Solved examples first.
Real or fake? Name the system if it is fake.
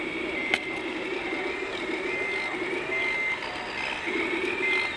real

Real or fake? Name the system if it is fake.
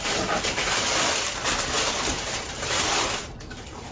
fake, vocoder, BigVGAN v2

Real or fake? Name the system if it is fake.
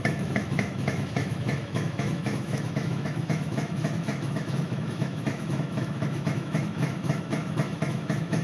fake, autoencoder, DAC-VAE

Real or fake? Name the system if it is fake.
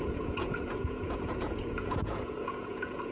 fake, vocoder, Vocos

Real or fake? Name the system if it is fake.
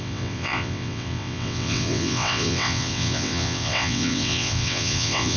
fake, vocoder, WaveNeXt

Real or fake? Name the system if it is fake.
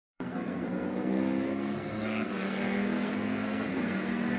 fake, codec, SNAC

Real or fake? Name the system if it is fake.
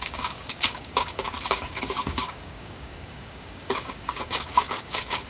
fake, codec, DAC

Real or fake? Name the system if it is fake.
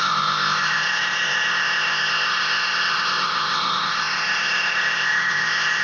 fake, codec, ZipCodec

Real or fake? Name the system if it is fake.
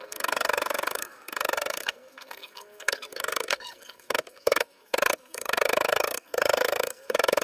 fake, codec, SNAC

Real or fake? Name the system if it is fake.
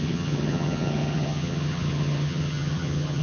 fake, vocoder, HiFi-GAN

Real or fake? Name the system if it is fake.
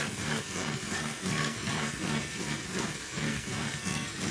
fake, codec, SNAC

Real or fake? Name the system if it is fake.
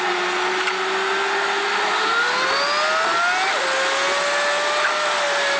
real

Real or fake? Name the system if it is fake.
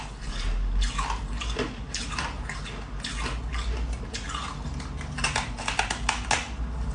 real